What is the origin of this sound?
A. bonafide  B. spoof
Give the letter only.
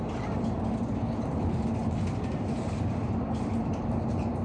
B